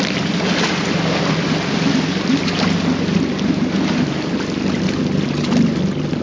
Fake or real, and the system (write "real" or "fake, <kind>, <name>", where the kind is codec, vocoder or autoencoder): real